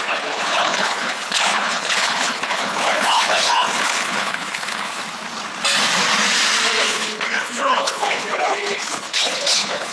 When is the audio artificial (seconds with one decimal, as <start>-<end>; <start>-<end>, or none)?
0.0-5.0; 6.8-9.9